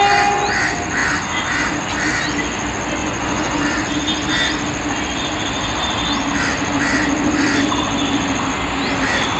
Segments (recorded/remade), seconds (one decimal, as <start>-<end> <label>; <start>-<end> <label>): 0.0-3.0 recorded; 3.0-3.6 remade; 3.6-9.4 recorded